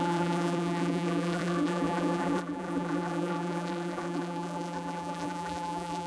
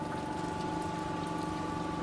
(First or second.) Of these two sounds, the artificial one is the first